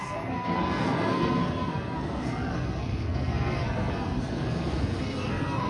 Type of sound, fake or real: fake